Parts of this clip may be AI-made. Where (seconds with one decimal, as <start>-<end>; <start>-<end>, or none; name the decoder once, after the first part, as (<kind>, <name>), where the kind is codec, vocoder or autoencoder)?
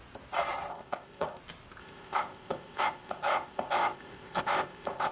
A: 0.7-1.4 (codec, ZipCodec); 1.8-5.1